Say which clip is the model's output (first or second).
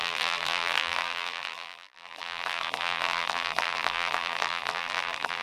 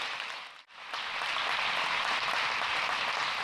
first